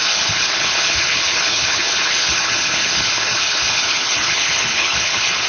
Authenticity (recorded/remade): remade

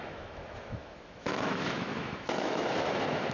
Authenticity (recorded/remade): remade